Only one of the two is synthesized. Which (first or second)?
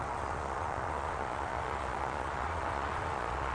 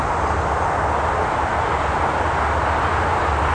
first